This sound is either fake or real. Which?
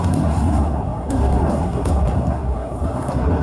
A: fake